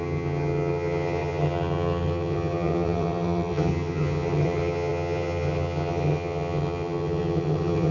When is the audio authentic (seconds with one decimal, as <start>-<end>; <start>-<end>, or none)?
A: none